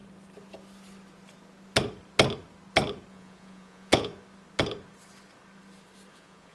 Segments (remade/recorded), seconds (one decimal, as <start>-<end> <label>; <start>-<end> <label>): 0.0-3.1 recorded; 3.1-4.1 remade; 4.1-6.1 recorded; 6.1-6.5 remade